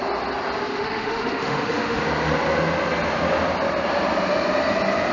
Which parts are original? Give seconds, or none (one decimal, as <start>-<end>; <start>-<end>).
0.0-0.7; 2.0-5.1